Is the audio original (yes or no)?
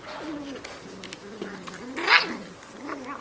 yes